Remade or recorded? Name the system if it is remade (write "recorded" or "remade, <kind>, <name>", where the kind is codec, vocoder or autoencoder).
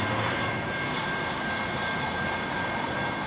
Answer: remade, vocoder, BigVGAN v2